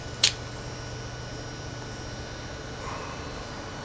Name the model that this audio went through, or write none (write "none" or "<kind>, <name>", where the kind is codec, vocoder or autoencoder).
none